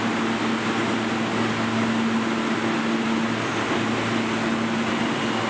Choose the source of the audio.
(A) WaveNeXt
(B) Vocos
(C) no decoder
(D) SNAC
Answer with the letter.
C